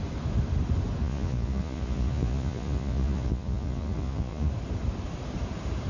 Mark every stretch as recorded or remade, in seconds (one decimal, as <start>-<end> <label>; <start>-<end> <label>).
0.0-1.0 recorded; 1.0-4.5 remade; 4.5-5.9 recorded